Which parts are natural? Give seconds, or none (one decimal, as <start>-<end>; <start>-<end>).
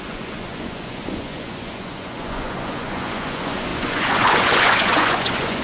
none